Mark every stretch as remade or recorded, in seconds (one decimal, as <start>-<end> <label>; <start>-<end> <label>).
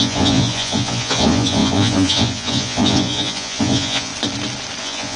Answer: 0.0-4.1 remade; 4.1-4.8 recorded; 4.8-5.2 remade